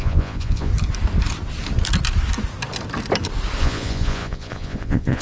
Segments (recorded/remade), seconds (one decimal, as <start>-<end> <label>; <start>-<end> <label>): 0.0-0.7 remade; 0.7-3.6 recorded; 3.6-5.2 remade